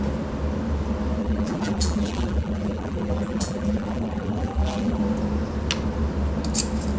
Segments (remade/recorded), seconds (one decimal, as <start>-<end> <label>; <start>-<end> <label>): 0.0-1.2 recorded; 1.2-5.0 remade; 5.0-7.0 recorded